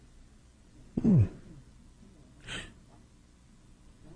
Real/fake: real